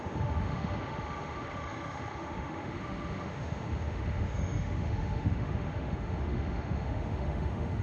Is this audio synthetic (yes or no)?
yes